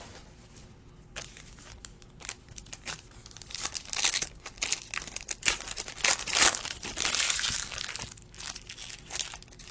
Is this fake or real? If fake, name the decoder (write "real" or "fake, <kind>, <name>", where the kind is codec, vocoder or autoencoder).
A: real